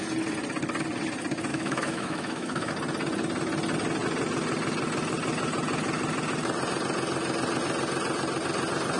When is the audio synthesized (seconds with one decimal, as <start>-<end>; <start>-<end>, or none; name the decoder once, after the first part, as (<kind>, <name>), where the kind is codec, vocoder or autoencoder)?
1.5-2.7 (autoencoder, DAC-VAE)